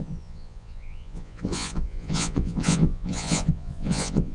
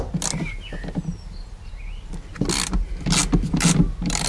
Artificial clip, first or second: first